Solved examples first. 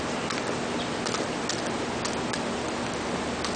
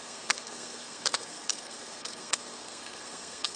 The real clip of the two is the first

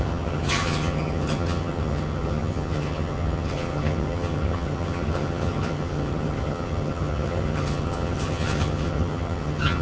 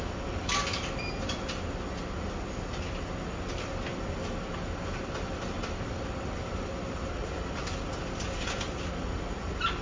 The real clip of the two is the second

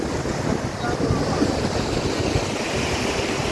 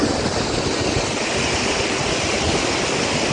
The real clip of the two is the second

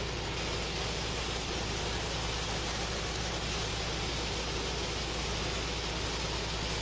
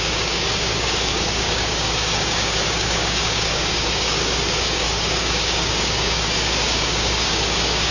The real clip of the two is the first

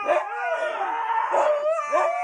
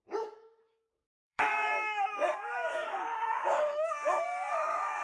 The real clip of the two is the first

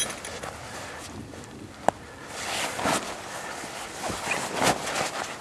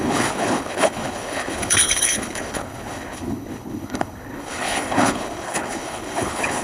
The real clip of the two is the first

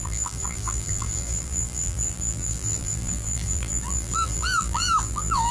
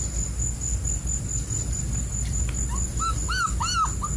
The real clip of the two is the second